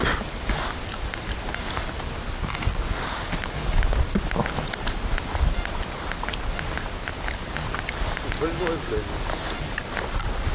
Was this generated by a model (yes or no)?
no